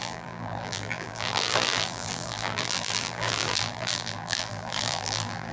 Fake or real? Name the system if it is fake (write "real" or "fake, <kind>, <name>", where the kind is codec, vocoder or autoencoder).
fake, vocoder, BigVGAN v2